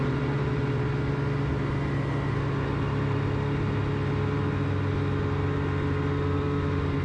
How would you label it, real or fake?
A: real